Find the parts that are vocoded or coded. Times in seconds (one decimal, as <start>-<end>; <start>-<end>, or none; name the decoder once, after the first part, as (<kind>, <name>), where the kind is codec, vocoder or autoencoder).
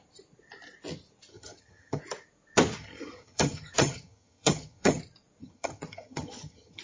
1.3-2.0 (vocoder, HiFi-GAN); 2.8-5.0; 5.4-6.8